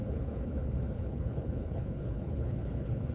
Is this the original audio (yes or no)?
no